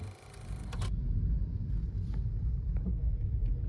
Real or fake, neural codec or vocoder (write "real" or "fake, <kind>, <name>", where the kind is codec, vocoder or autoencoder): real